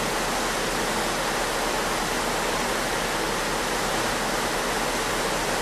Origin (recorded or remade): recorded